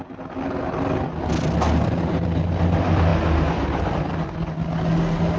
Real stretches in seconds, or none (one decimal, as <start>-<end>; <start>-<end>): 0.0-5.4